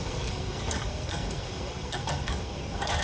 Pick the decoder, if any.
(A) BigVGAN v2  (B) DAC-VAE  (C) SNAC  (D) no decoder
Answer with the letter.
C